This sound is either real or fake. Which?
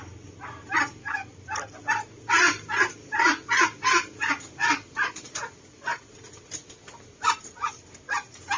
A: real